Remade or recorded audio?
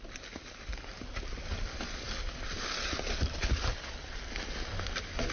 recorded